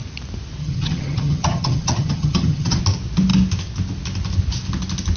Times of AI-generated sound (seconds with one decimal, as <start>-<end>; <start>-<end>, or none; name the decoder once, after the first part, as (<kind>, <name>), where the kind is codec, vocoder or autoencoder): 0.6-2.8 (vocoder, HiFi-GAN)